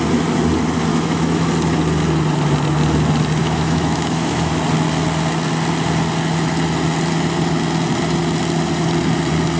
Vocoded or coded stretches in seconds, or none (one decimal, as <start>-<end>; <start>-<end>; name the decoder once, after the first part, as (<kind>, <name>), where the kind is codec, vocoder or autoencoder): 0.9-1.5 (autoencoder, DAC-VAE); 3.4-4.5

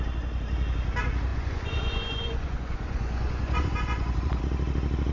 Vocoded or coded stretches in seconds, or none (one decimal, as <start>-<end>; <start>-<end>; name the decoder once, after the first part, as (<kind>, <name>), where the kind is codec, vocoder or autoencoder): 1.3-4.4 (vocoder, Vocos)

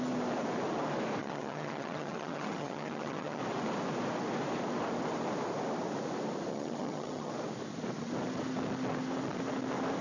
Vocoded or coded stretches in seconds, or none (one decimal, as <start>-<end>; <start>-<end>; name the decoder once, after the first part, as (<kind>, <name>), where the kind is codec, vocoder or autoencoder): 1.2-3.4 (vocoder, HiFi-GAN); 6.5-7.3

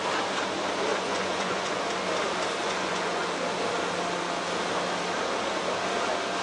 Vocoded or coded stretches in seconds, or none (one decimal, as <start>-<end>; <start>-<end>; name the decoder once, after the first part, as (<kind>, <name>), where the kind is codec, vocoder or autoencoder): 0.9-1.8 (vocoder, Vocos); 2.6-3.2